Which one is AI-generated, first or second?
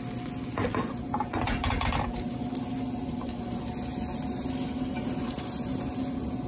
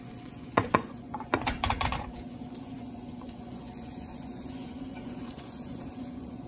second